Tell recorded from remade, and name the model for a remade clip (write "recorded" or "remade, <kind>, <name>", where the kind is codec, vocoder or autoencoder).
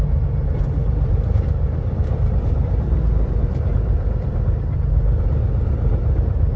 remade, vocoder, BigVGAN v2